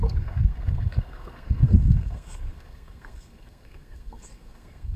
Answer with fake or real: fake